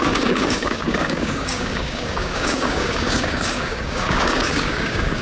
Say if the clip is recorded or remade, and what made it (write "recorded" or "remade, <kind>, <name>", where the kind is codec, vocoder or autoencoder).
remade, codec, DAC